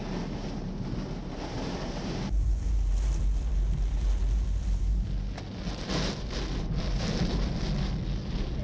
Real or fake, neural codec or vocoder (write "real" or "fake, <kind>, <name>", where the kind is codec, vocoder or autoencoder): real